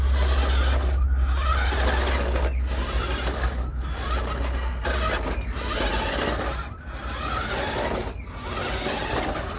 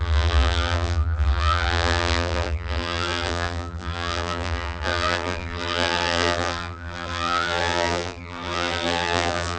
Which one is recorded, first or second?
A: first